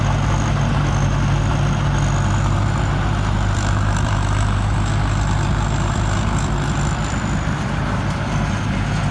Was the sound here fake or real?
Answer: fake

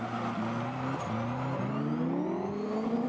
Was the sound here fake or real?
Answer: real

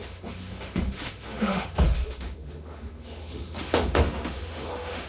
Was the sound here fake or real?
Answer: fake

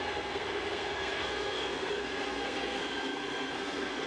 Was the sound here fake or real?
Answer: fake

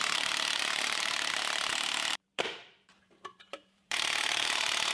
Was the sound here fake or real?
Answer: fake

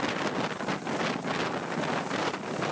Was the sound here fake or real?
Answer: real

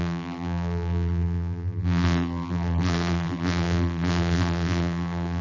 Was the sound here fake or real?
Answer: fake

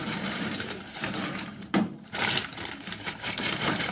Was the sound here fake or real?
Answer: fake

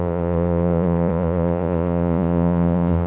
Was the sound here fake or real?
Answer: fake